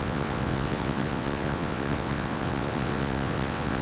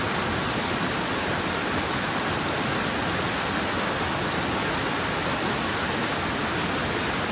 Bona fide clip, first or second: second